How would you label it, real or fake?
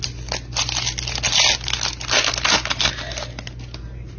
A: real